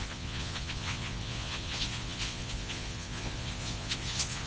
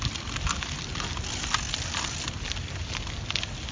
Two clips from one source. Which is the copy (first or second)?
first